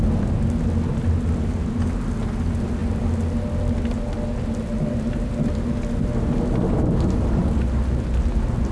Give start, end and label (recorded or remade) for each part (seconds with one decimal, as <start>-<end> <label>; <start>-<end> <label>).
0.0-8.7 recorded